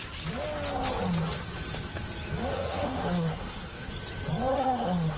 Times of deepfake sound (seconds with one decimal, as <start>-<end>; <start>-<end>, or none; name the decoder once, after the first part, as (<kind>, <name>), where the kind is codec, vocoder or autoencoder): 2.5-3.9 (codec, SNAC); 4.5-5.2